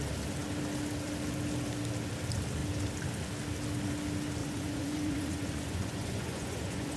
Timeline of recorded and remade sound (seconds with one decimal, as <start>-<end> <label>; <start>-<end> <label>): 0.0-4.4 recorded; 4.4-7.0 remade